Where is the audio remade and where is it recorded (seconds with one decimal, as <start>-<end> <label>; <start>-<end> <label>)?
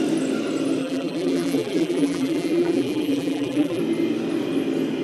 0.0-0.8 recorded; 0.8-3.8 remade; 3.8-5.0 recorded